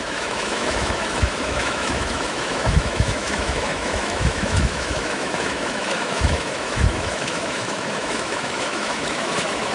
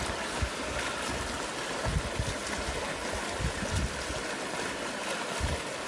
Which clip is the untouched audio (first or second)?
second